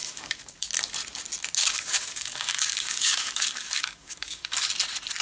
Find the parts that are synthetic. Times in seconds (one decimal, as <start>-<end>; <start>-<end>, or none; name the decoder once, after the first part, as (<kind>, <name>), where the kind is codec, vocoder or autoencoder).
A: 0.0-0.7 (codec, DAC); 1.6-4.7